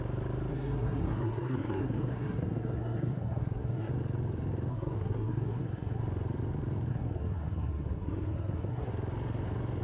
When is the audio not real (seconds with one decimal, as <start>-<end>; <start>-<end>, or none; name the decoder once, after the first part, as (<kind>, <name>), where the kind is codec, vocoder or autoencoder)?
0.5-3.9 (codec, SNAC); 4.7-6.0; 6.9-8.9